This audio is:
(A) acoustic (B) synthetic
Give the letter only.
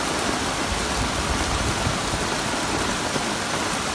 A